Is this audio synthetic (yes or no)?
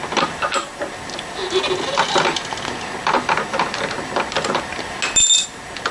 no